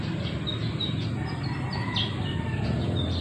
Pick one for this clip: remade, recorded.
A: recorded